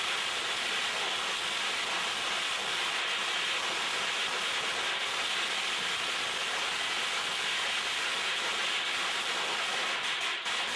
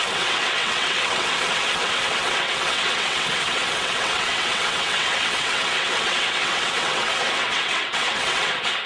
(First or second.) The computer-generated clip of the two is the second